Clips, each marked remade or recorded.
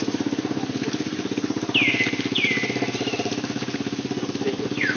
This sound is recorded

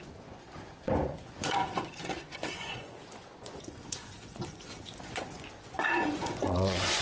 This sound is remade